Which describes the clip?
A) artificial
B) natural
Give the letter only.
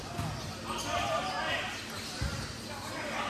B